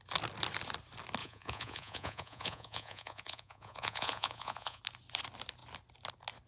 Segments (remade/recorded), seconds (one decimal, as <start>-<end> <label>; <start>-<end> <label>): 0.0-1.2 recorded; 1.2-4.8 remade; 4.8-6.5 recorded